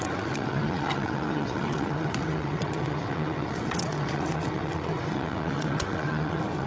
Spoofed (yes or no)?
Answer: yes